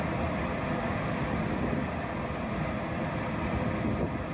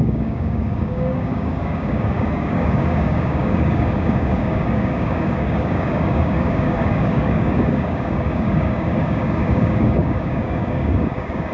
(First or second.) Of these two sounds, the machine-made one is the second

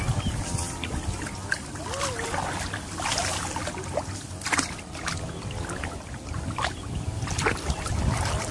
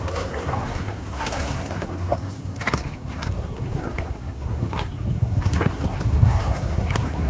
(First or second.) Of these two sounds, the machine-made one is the second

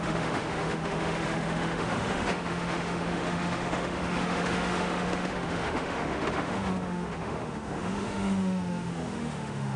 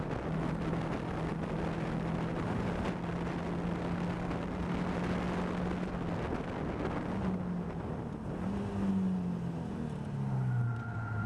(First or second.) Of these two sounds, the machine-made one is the first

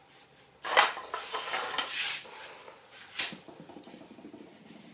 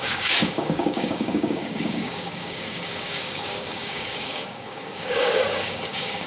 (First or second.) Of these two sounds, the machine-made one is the second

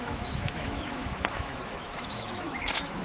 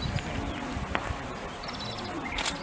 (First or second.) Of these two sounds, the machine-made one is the first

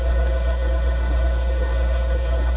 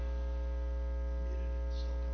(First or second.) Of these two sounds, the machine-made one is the first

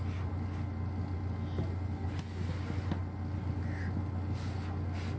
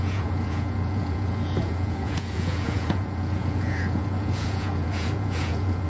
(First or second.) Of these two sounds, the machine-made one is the second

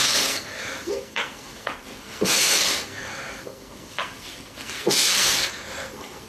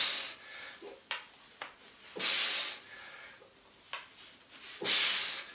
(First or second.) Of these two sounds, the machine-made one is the first